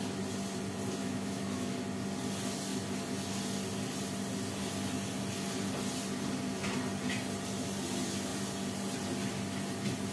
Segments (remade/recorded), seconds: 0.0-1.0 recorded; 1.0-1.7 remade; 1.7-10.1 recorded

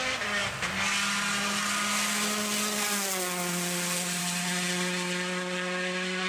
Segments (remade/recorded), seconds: 0.0-6.3 recorded

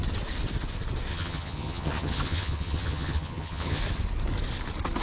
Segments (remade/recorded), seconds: 0.0-1.1 recorded; 1.1-3.8 remade; 3.8-5.0 recorded

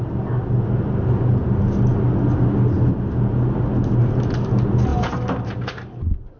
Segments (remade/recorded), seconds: 0.0-6.4 recorded

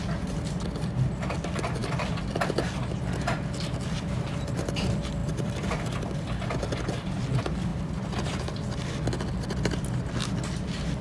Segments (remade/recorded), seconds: 0.0-5.2 recorded; 5.2-6.2 remade; 6.2-7.7 recorded; 7.7-8.8 remade; 8.8-11.0 recorded

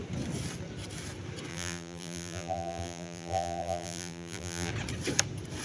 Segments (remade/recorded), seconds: 0.0-1.5 recorded; 1.5-4.7 remade; 4.7-5.6 recorded

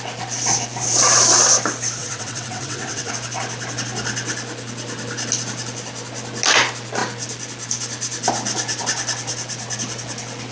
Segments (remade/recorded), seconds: 0.0-2.0 recorded; 2.0-3.1 remade; 3.1-10.5 recorded